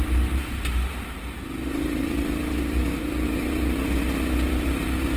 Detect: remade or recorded recorded